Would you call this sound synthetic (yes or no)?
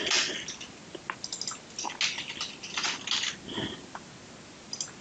no